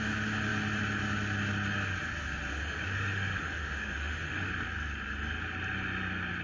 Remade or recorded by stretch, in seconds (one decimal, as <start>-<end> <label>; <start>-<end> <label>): 0.0-2.5 recorded; 2.5-4.5 remade; 4.5-6.4 recorded